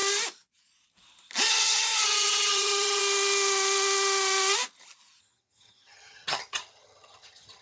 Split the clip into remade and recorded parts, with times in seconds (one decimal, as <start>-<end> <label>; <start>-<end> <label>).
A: 0.0-1.4 recorded; 1.4-3.0 remade; 3.0-5.2 recorded; 5.2-7.6 remade